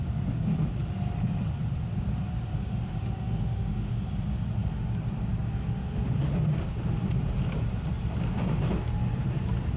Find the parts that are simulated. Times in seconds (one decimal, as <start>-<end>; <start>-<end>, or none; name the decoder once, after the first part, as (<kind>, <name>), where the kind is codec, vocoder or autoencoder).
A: 2.5-3.9 (autoencoder, DAC-VAE)